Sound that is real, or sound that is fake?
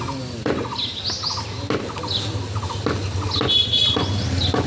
real